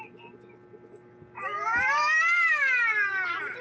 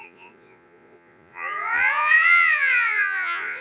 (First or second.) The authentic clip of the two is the first